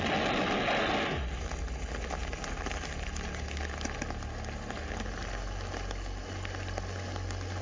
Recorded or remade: recorded